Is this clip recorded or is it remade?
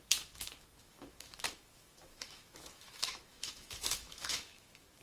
remade